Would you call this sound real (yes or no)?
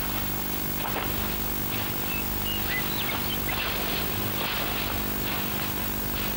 yes